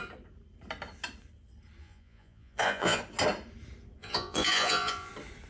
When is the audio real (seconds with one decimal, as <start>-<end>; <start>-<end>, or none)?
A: 0.0-1.8; 3.0-4.0; 5.1-5.5